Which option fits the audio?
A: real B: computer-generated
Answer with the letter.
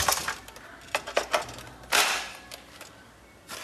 A